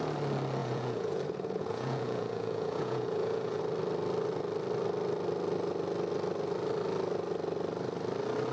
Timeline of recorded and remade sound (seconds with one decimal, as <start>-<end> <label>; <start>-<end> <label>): 0.0-0.6 recorded; 0.6-3.6 remade; 3.6-8.5 recorded